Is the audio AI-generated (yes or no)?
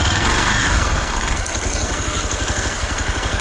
yes